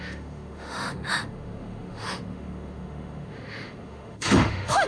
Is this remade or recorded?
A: remade